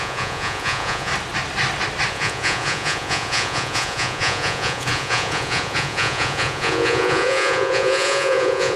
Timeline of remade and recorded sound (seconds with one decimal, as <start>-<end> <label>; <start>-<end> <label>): 0.0-1.1 remade; 1.1-2.1 recorded; 2.1-8.8 remade